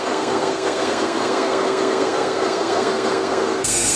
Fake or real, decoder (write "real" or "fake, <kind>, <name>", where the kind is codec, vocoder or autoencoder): fake, codec, SNAC